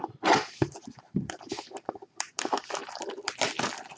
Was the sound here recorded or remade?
recorded